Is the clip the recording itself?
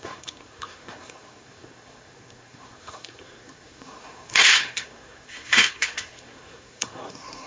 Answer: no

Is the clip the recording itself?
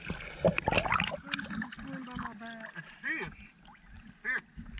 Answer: yes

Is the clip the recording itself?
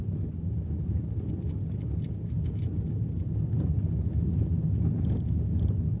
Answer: yes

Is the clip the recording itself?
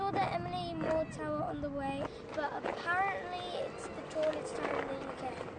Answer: yes